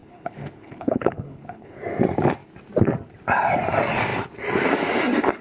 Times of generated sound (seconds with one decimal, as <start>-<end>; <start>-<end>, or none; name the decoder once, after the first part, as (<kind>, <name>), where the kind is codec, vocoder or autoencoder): 0.0-1.8 (codec, HILCodec)